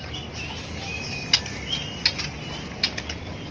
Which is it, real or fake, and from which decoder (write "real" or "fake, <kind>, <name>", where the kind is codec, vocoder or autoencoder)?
real